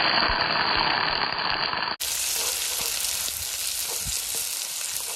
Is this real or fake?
real